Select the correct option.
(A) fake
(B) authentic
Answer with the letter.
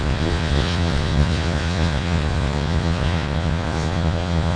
A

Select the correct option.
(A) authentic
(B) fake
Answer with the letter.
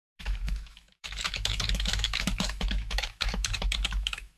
B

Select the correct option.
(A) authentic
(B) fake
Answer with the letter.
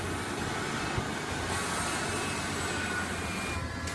B